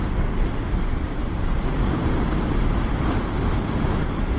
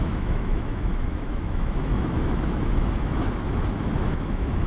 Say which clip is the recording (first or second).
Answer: first